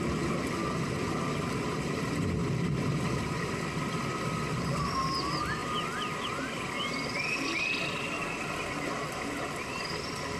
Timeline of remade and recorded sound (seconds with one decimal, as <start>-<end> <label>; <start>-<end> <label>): 0.0-10.4 recorded

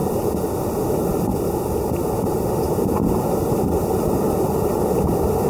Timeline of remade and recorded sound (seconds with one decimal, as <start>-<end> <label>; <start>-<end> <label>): 0.0-1.3 recorded; 1.3-3.2 remade; 3.2-5.5 recorded